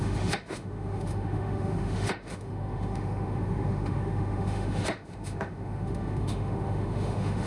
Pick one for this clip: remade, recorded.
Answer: remade